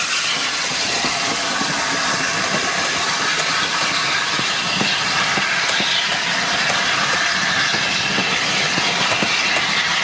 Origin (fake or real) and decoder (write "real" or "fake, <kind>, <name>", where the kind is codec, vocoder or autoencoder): real